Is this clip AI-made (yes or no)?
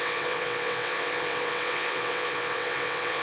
yes